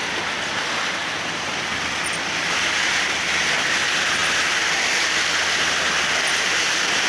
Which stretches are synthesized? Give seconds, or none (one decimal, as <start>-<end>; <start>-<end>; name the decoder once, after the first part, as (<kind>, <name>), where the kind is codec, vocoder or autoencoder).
none